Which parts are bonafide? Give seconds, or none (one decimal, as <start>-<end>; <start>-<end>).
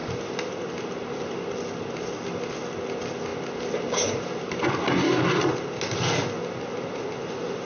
0.0-7.7